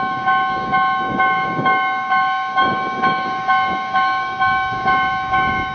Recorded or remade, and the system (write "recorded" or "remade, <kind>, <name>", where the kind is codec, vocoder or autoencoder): remade, codec, DAC